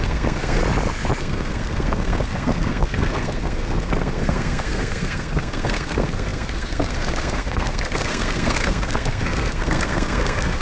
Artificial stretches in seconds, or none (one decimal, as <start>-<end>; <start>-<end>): 0.0-0.6; 1.2-10.6